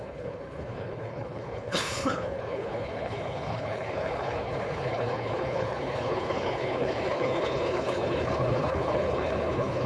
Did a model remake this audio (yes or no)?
yes